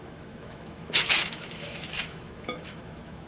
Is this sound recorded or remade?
remade